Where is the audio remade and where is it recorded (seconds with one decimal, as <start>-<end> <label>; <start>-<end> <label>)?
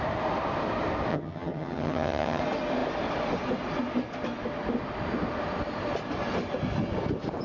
0.0-1.1 recorded; 1.1-2.4 remade; 2.4-7.4 recorded